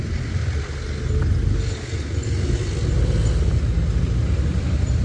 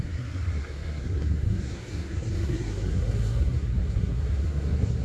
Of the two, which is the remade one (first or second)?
second